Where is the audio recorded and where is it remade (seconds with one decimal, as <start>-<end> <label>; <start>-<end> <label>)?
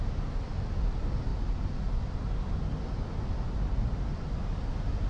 0.0-5.1 recorded